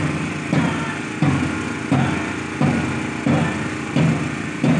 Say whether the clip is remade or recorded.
recorded